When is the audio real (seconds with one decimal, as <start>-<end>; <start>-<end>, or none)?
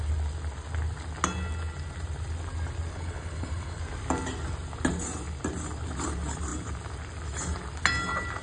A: 0.0-2.9; 3.8-8.4